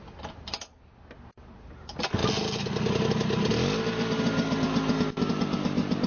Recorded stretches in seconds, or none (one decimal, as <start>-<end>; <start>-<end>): 0.0-6.1